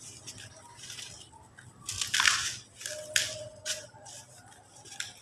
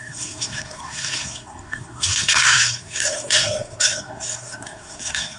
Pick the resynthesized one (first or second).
second